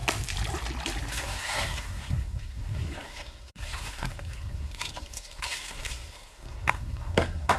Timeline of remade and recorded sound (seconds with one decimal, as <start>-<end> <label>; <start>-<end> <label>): 0.0-1.1 recorded; 1.1-7.6 remade